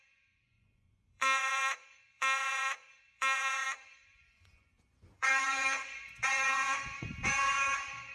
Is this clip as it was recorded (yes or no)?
no